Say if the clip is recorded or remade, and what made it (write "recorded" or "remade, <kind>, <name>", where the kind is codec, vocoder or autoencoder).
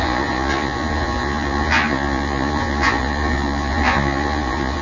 remade, vocoder, Vocos